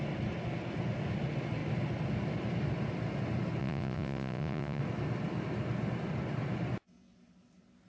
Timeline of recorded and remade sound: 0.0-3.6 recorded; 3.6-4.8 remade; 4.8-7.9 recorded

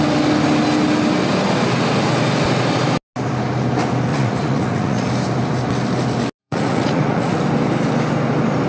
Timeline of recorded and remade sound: 0.0-4.1 recorded; 4.1-5.1 remade; 5.1-6.4 recorded; 6.4-7.4 remade; 7.4-8.7 recorded